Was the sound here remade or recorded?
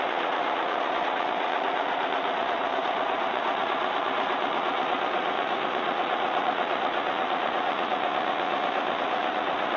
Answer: remade